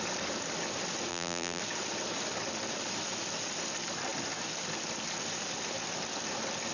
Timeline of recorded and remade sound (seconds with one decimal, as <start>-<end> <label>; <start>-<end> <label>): 0.0-1.1 recorded; 1.1-1.6 remade; 1.6-6.7 recorded